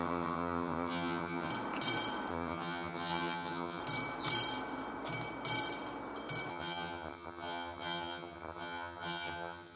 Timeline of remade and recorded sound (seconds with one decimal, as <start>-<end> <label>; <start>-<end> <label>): 0.0-1.5 remade; 1.5-2.3 recorded; 2.3-3.8 remade; 3.8-6.5 recorded; 6.5-9.8 remade